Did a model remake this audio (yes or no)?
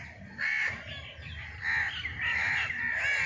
no